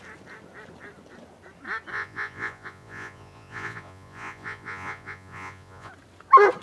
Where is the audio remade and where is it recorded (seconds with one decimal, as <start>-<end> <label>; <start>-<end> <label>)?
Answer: 0.0-1.9 recorded; 1.9-5.9 remade; 5.9-6.6 recorded